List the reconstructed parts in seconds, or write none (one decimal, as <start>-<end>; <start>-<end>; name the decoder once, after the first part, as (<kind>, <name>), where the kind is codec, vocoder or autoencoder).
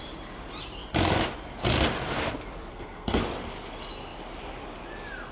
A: 2.7-3.2 (codec, SNAC)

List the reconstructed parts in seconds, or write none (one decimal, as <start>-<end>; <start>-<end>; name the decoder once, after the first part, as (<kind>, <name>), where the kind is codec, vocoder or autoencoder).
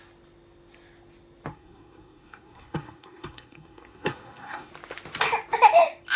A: 1.5-4.7 (codec, SNAC)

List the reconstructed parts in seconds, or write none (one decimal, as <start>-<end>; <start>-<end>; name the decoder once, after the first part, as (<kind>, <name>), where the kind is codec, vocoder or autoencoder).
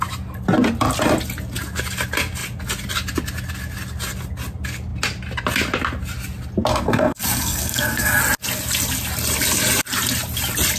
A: 6.7-8.2 (codec, SNAC)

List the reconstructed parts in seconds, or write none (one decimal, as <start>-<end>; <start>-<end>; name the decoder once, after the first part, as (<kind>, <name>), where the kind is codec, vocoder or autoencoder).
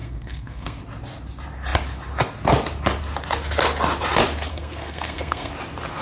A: 0.0-0.8 (codec, SNAC); 4.5-5.5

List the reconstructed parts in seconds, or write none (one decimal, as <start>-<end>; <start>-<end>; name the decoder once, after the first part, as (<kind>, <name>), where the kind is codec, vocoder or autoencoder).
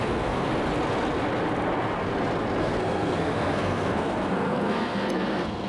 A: 0.0-0.5 (codec, SNAC); 2.6-5.7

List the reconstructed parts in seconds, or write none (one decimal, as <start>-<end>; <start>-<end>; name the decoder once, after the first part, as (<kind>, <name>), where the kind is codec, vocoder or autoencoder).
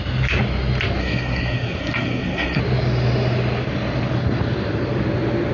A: 1.0-2.6 (codec, SNAC)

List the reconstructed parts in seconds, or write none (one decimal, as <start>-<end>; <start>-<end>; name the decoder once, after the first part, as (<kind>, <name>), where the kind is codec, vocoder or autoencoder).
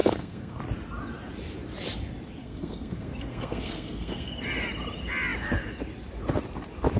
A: 0.0-0.6 (codec, SNAC); 2.4-4.3